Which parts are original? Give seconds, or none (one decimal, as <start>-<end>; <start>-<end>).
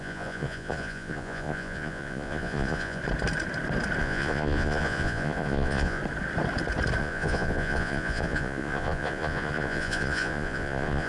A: 3.0-4.0; 6.0-7.0